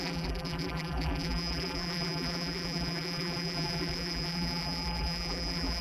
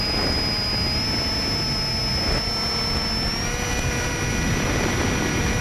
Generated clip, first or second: first